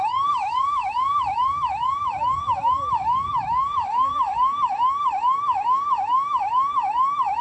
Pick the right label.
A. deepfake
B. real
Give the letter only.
A